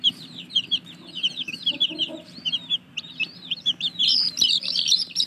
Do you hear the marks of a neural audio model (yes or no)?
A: yes